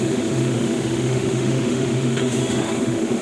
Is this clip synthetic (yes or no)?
yes